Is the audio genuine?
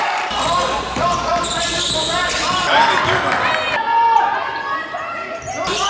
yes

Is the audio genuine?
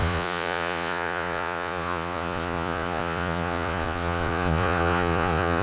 no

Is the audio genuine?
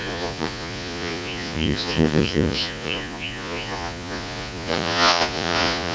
no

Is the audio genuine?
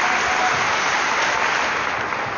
yes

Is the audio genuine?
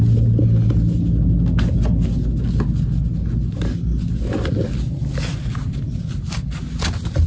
yes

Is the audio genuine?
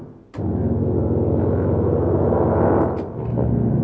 yes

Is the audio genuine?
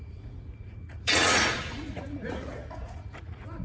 no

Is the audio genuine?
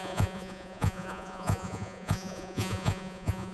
no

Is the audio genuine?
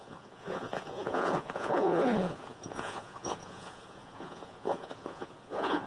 no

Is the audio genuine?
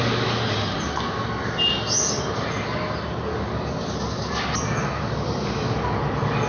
yes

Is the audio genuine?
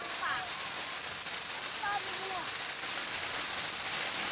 yes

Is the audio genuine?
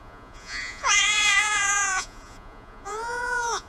no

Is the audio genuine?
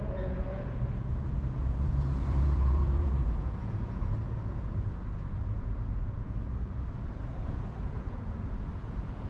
no